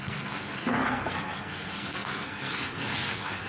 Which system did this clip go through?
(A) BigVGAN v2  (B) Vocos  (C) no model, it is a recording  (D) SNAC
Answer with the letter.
D